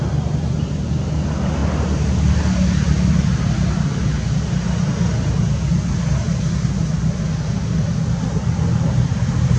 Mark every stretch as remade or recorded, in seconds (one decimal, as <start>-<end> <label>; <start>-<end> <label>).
0.0-9.6 recorded